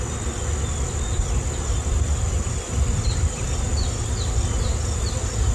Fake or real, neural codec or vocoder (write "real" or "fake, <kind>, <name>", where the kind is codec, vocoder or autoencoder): real